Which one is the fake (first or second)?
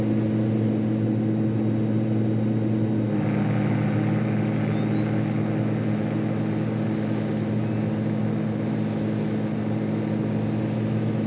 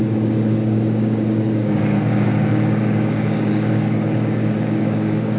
second